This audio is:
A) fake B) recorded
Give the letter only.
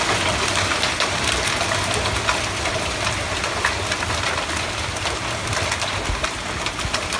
B